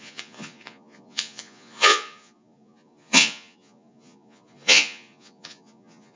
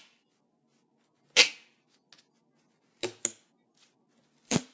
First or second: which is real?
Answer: second